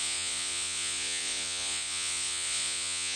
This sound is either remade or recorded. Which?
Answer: remade